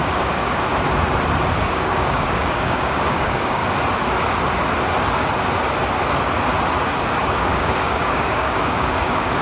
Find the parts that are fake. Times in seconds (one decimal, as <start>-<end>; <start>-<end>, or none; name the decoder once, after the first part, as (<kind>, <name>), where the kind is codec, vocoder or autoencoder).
0.0-0.7 (codec, DAC); 1.6-3.6; 7.2-9.4